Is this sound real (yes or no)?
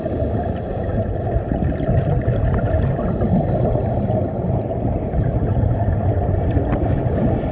yes